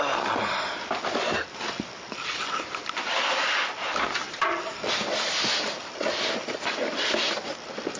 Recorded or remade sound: recorded